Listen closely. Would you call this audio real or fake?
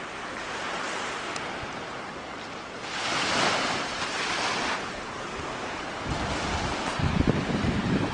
real